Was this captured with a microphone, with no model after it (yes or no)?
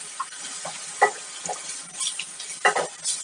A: yes